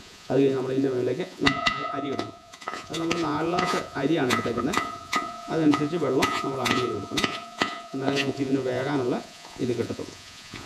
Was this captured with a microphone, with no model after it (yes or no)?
no